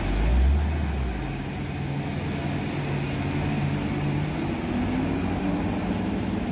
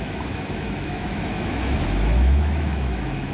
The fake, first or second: second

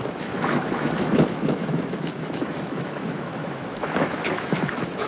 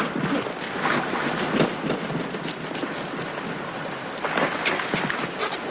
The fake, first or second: first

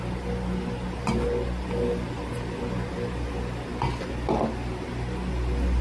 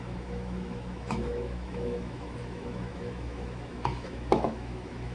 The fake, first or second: second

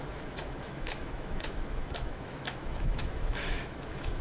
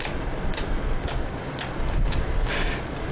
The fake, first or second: first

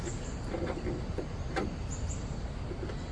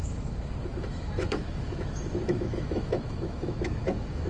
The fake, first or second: second